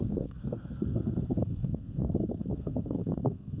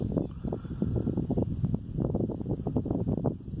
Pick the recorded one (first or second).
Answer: second